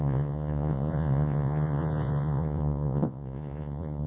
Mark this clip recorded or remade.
remade